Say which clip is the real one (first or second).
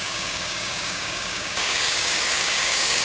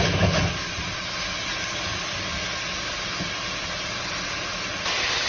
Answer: second